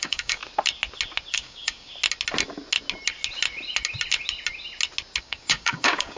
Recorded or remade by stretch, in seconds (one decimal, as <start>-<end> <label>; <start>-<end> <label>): 0.0-0.4 remade; 0.4-1.3 recorded; 1.3-1.9 remade; 1.9-5.2 recorded; 5.2-6.2 remade